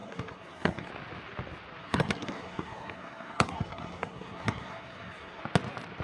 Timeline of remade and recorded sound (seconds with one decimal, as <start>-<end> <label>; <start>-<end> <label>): 0.0-0.9 remade; 0.9-1.8 recorded; 1.8-5.4 remade; 5.4-6.0 recorded